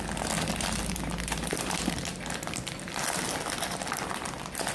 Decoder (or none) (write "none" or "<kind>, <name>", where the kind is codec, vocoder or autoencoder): vocoder, BigVGAN v2